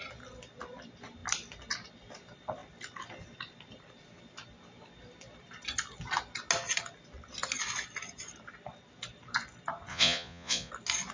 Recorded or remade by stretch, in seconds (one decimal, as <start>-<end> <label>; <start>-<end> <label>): 0.0-9.9 recorded; 9.9-10.7 remade; 10.7-11.1 recorded